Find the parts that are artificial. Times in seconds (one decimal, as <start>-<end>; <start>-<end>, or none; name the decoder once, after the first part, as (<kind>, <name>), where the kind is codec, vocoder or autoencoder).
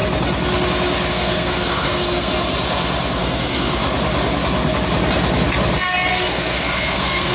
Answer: 1.1-2.3 (codec, SNAC); 3.2-3.8; 6.1-7.3